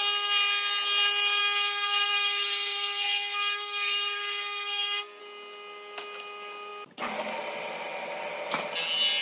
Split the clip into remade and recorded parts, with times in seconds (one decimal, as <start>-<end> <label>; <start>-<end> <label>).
0.0-1.4 recorded; 1.4-5.2 remade; 5.2-9.2 recorded